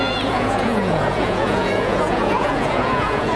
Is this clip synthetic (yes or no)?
yes